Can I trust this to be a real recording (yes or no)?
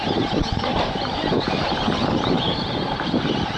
no